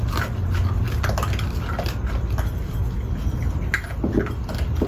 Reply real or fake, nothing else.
real